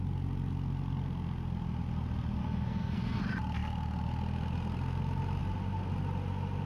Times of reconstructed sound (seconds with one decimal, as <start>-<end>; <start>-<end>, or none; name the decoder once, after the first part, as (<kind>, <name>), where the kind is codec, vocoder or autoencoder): 2.4-3.2 (codec, SNAC)